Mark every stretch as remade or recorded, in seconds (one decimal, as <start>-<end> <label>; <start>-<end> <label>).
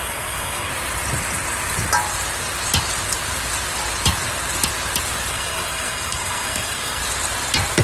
0.0-0.7 remade; 0.7-5.3 recorded; 5.3-7.0 remade; 7.0-7.8 recorded